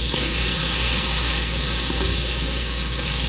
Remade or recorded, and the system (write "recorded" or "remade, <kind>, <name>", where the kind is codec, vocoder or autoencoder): remade, codec, SNAC